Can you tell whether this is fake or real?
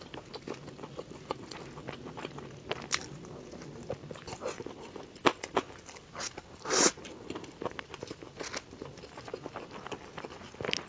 real